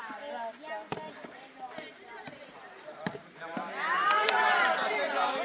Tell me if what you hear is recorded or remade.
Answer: recorded